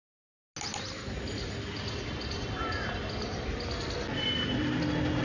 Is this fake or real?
real